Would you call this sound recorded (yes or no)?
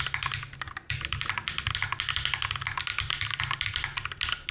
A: yes